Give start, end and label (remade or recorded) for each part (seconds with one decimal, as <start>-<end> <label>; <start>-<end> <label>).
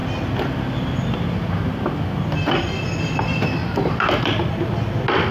0.0-3.6 recorded; 3.6-4.2 remade; 4.2-5.3 recorded